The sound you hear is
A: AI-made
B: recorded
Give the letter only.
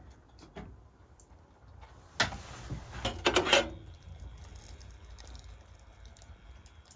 B